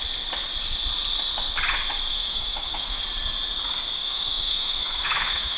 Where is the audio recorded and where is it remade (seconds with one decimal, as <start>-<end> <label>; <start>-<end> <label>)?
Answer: 0.0-2.1 recorded; 2.1-3.0 remade; 3.0-4.0 recorded; 4.0-5.6 remade